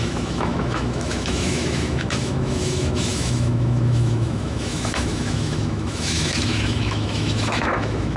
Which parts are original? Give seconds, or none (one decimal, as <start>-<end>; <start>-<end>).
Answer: none